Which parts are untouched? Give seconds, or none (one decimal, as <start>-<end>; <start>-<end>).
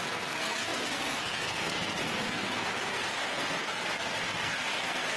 none